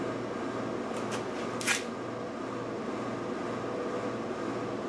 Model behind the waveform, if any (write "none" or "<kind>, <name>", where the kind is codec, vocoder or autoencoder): none